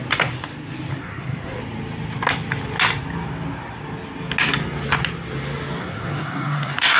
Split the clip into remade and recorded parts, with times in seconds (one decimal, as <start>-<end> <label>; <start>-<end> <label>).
0.0-1.0 recorded; 1.0-1.6 remade; 1.6-5.8 recorded; 5.8-7.0 remade